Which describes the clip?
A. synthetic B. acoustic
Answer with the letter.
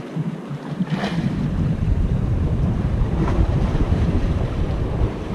A